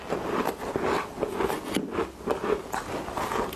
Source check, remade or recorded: recorded